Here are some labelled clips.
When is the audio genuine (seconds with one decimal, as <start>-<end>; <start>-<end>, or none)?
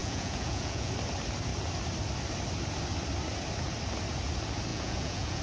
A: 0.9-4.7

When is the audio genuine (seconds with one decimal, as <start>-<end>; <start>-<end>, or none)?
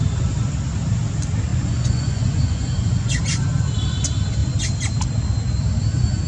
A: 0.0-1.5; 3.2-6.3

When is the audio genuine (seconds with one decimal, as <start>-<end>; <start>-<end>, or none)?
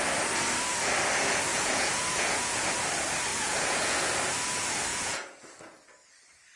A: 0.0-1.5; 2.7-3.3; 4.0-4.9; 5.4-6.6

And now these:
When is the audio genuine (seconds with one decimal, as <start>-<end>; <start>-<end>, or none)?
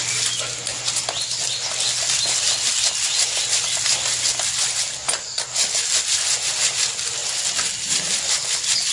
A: 0.0-8.9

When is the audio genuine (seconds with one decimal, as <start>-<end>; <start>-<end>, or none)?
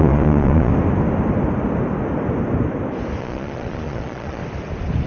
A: 0.7-3.2; 4.4-5.1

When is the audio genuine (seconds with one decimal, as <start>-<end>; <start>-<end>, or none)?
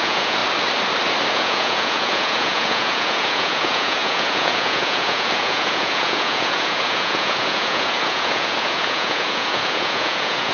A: 0.4-1.3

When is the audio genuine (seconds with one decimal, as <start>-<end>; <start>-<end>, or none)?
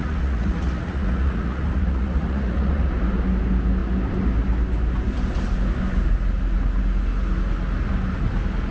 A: 2.9-8.7